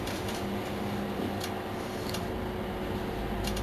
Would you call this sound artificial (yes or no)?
no